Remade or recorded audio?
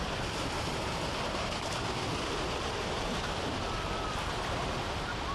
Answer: remade